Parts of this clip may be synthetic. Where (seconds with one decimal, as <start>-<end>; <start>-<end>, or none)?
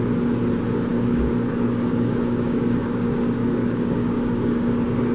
0.0-5.1